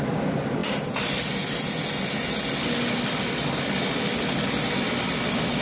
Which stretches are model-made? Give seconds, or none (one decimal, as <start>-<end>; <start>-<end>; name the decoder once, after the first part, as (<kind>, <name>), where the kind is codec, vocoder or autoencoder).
none